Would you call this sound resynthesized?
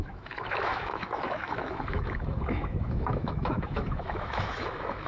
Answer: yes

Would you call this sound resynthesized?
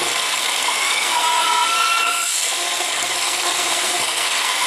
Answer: yes